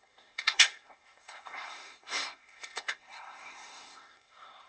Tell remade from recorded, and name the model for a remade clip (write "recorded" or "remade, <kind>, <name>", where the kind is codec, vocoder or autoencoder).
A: remade, codec, SNAC